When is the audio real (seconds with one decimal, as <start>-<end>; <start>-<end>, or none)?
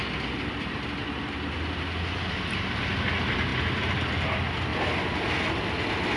0.0-6.2